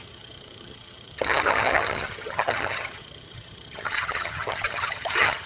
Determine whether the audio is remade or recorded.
remade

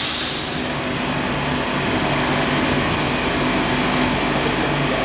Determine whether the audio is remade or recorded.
recorded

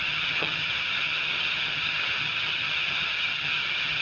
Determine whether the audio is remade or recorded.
remade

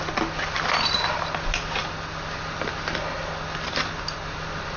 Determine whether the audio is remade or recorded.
recorded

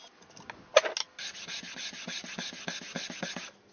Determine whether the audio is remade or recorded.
recorded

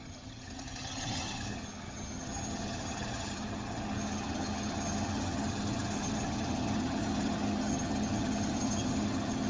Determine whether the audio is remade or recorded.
remade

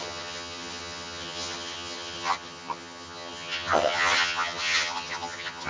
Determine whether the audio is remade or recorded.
remade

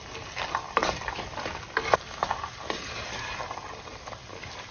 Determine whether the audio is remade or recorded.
recorded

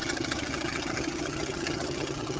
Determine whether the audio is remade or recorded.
remade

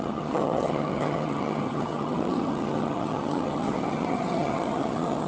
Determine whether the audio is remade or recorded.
remade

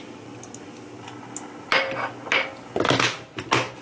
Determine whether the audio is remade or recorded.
recorded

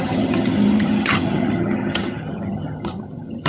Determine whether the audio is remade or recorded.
remade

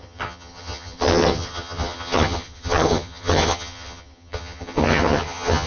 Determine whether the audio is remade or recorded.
remade